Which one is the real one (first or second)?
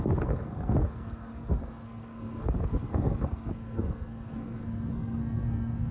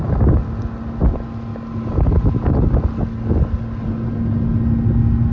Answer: second